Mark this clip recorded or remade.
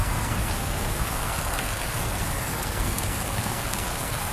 remade